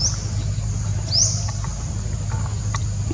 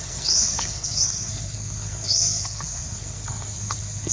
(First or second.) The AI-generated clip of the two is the second